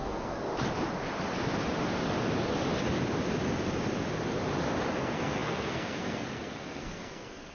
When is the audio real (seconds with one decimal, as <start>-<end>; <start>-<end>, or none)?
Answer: 0.5-5.0